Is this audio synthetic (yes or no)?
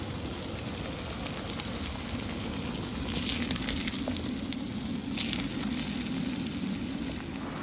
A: no